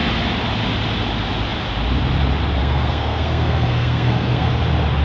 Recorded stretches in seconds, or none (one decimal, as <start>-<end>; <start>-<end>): 0.0-2.6; 4.5-5.0

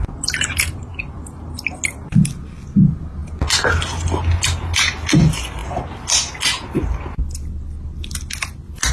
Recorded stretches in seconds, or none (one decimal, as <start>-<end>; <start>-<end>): 0.0-8.9

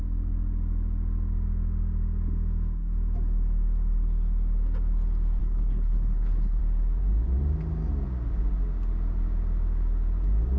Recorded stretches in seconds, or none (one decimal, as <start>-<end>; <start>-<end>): 0.0-5.4; 6.6-10.6

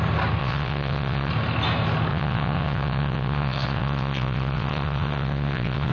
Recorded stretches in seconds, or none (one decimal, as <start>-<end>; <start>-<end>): 0.0-0.4; 1.3-2.1

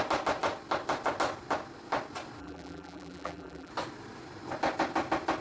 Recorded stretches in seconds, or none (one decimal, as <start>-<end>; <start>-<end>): 0.0-2.4; 3.7-5.4

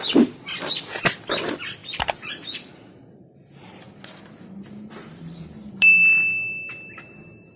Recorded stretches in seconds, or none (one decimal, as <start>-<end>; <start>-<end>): 0.0-7.6

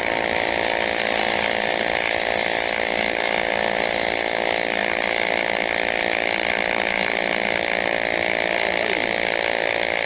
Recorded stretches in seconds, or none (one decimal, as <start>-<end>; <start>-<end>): 0.0-10.1

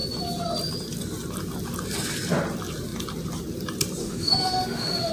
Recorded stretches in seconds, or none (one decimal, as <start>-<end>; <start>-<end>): 0.0-4.0